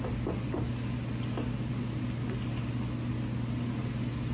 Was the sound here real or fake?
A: real